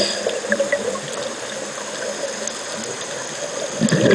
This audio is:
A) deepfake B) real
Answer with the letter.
B